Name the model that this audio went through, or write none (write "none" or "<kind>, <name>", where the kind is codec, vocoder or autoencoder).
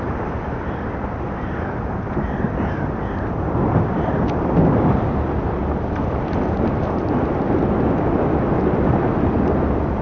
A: none